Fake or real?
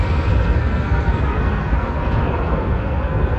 fake